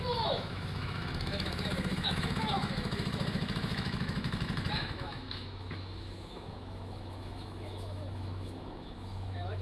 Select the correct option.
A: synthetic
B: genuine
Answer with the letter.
A